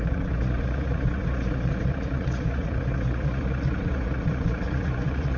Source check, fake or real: fake